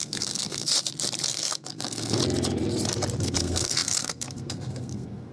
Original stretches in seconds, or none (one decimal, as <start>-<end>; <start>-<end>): 0.7-1.3; 2.2-3.2